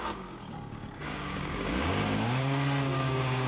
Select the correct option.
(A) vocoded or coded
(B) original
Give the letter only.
A